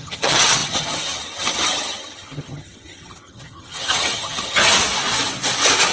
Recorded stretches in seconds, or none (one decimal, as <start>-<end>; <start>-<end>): 4.6-5.9